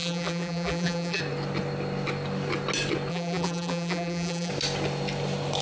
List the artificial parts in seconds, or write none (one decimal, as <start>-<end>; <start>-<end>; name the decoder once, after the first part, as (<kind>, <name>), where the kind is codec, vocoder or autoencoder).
0.0-1.2 (vocoder, BigVGAN v2); 3.1-4.5